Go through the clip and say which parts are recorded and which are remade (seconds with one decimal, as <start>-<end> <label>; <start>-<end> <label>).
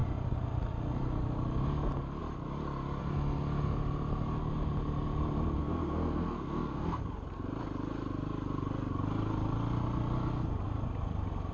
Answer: 0.0-5.6 recorded; 5.6-7.0 remade; 7.0-11.5 recorded